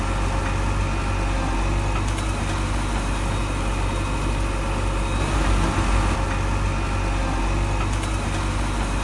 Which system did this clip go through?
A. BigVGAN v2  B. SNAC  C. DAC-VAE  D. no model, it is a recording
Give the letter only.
D